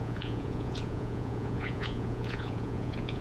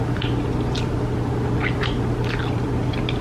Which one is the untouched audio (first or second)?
second